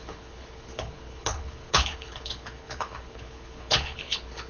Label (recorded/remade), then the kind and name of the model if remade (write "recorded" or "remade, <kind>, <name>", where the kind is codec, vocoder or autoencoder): remade, codec, HILCodec